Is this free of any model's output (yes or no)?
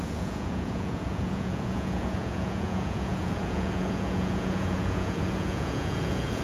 no